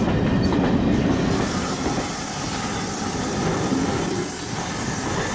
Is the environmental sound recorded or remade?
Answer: recorded